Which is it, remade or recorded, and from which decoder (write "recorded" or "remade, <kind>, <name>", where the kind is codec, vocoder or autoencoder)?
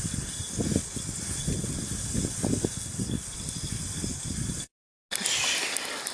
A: recorded